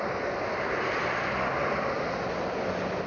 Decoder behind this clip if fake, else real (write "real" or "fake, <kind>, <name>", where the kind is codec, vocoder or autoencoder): real